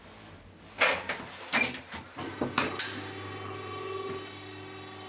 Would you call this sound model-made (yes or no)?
no